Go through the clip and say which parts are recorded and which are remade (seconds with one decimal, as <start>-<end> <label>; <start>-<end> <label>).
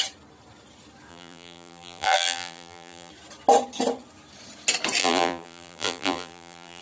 0.0-1.1 recorded; 1.1-3.1 remade; 3.1-5.0 recorded; 5.0-6.8 remade